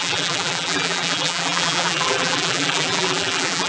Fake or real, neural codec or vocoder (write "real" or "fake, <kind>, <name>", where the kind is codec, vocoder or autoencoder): fake, vocoder, BigVGAN v2